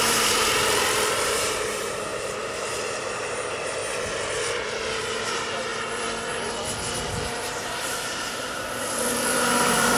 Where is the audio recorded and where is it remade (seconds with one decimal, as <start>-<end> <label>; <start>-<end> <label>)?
0.0-2.1 remade; 2.1-2.7 recorded; 2.7-3.8 remade; 3.8-4.9 recorded; 4.9-5.7 remade; 5.7-7.0 recorded; 7.0-10.0 remade